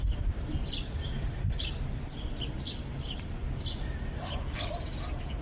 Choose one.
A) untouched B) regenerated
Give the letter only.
A